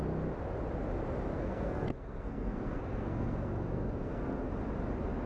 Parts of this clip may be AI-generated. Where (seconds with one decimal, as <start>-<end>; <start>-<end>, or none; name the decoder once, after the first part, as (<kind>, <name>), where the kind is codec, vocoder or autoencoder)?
1.3-4.5 (codec, SNAC)